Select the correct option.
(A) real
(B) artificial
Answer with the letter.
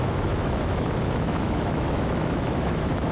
B